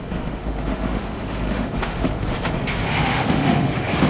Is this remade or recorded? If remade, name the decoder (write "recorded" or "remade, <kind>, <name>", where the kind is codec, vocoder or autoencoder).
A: remade, autoencoder, DAC-VAE